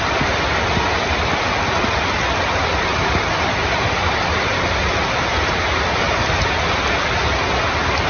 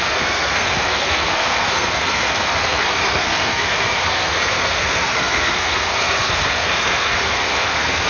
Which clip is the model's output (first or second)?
second